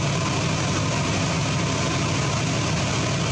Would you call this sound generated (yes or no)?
no